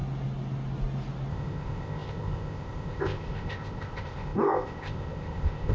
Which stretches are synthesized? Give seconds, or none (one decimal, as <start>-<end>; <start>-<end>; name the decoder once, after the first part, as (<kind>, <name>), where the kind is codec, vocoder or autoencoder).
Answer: 1.3-5.7 (codec, ZipCodec)